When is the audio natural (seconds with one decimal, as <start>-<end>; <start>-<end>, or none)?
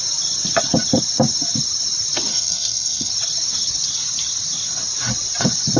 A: 0.0-2.3; 3.1-5.8